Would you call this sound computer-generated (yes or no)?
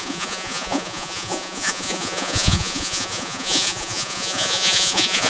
yes